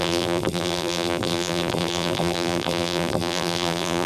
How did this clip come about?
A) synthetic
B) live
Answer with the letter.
A